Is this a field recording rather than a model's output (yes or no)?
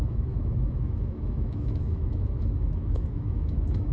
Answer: no